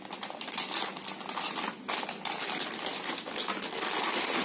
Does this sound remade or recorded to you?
recorded